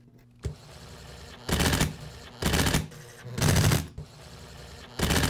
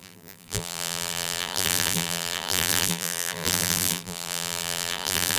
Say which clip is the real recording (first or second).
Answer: first